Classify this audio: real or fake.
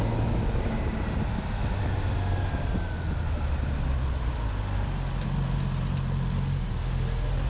real